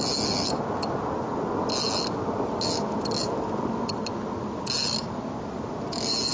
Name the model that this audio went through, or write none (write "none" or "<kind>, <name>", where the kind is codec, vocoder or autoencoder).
none